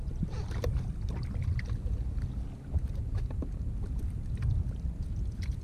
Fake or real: real